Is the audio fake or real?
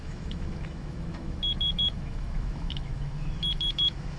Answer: fake